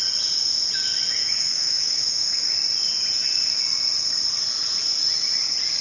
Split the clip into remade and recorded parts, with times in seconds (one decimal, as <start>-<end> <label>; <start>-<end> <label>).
0.0-1.2 recorded; 1.2-2.5 remade; 2.5-5.8 recorded